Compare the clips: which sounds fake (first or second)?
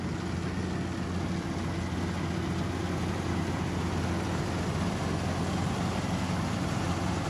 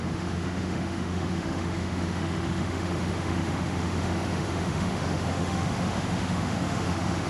second